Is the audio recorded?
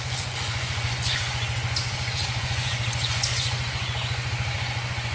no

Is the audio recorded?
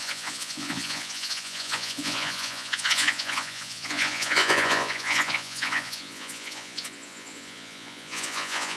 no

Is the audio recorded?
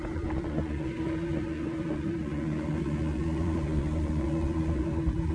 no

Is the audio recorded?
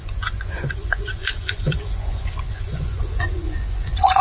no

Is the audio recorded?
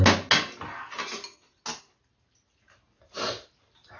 yes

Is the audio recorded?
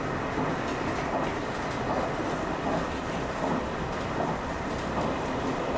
yes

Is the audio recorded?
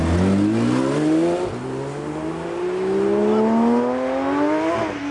yes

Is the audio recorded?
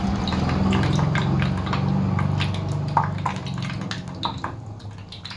yes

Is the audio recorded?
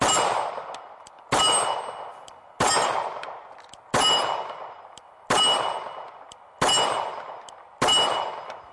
yes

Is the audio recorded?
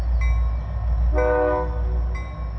yes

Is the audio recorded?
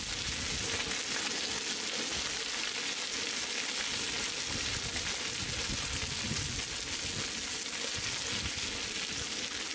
yes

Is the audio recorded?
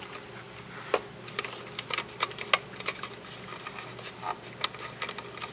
yes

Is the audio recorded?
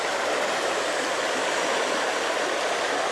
yes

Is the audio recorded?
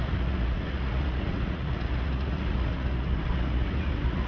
no